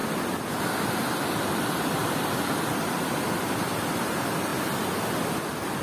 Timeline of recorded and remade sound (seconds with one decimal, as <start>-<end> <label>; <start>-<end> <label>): 0.0-0.9 recorded; 0.9-2.0 remade; 2.0-2.7 recorded; 2.7-5.8 remade